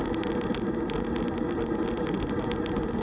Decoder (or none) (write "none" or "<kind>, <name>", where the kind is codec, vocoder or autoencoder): none